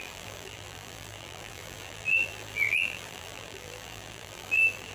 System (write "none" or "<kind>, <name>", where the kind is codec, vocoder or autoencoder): vocoder, BigVGAN v2